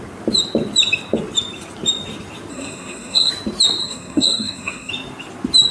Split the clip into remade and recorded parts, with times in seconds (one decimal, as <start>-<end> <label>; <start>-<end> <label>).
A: 0.0-2.5 recorded; 2.5-3.3 remade; 3.3-3.8 recorded; 3.8-4.9 remade; 4.9-5.7 recorded